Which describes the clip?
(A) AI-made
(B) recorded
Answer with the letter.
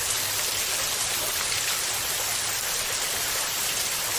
B